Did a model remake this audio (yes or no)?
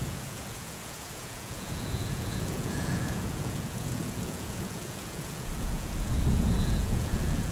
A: yes